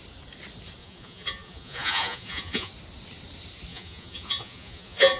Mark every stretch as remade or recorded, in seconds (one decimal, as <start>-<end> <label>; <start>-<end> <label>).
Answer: 0.0-0.8 recorded; 0.8-2.7 remade; 2.7-3.7 recorded; 3.7-5.2 remade